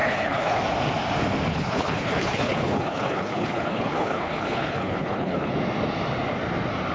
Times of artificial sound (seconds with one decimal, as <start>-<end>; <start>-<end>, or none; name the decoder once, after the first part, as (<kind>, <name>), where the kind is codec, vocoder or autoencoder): 0.0-0.6 (codec, HILCodec); 1.5-5.5